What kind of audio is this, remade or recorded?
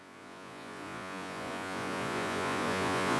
remade